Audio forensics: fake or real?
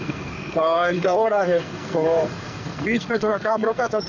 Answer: fake